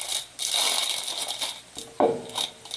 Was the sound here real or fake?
real